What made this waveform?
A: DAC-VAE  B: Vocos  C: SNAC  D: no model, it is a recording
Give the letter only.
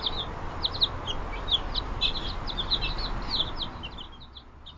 D